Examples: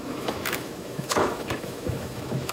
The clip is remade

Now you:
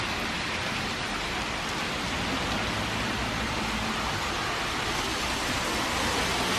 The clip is recorded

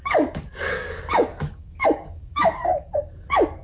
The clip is remade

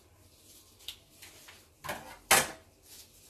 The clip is recorded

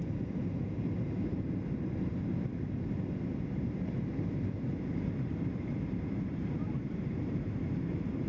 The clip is remade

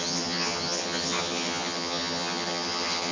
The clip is remade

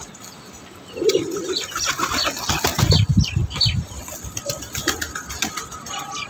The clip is recorded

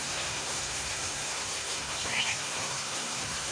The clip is remade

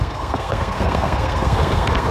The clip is remade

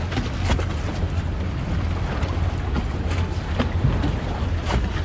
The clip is recorded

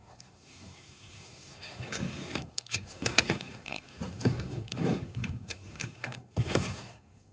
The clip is remade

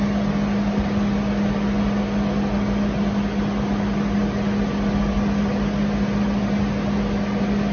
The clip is recorded